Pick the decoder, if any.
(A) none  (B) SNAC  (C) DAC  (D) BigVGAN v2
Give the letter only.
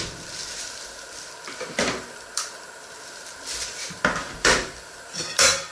D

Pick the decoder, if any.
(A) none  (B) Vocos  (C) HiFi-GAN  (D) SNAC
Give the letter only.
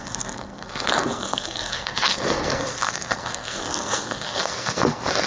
D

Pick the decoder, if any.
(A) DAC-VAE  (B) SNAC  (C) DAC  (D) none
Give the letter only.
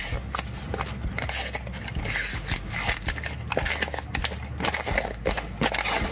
D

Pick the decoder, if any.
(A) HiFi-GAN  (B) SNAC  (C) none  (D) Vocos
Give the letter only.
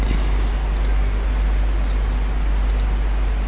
C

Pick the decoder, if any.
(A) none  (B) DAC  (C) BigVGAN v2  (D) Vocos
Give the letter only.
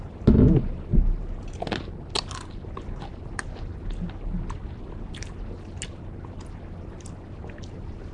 A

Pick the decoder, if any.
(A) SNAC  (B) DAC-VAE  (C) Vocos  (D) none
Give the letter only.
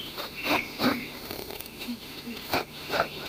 B